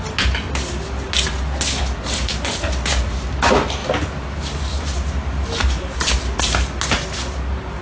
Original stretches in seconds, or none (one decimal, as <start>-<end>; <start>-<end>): 0.0-7.8